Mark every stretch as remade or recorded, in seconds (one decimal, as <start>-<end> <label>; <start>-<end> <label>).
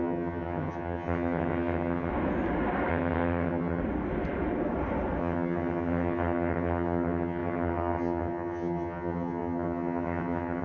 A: 0.0-2.1 remade; 2.1-2.9 recorded; 2.9-3.8 remade; 3.8-5.2 recorded; 5.2-10.6 remade